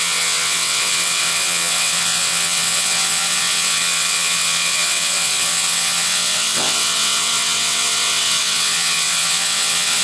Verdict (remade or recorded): remade